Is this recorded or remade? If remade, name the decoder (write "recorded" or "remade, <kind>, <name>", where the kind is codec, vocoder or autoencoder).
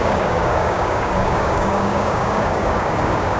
remade, codec, DAC